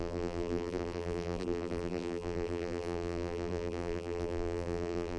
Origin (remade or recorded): remade